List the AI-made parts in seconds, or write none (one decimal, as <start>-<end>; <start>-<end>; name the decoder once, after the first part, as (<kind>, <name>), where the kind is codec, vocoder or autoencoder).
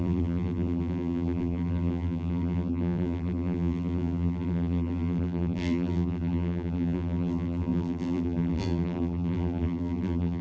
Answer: 0.0-10.4 (vocoder, BigVGAN v2)